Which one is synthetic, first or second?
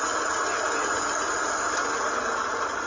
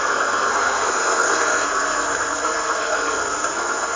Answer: second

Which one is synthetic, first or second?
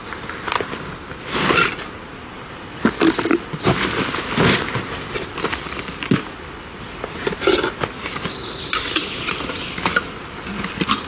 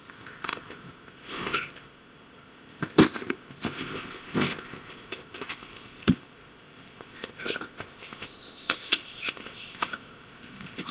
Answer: second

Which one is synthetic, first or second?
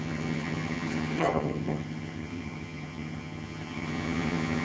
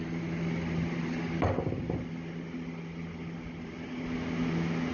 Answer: first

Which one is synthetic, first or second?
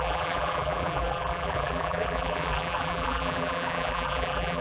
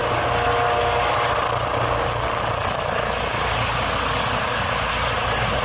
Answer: first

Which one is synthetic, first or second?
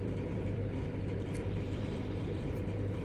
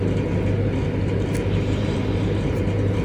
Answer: first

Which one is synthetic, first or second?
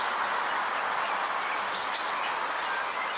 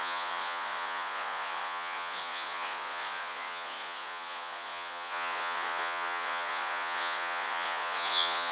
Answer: second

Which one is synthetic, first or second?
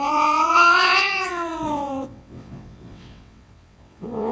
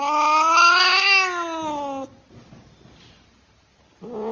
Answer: first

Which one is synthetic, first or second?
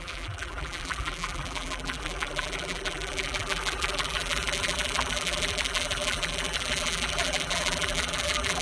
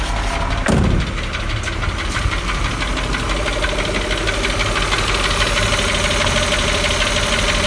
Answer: first